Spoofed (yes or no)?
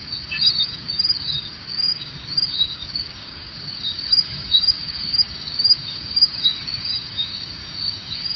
yes